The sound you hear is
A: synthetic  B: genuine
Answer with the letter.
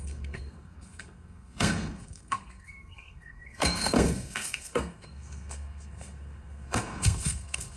A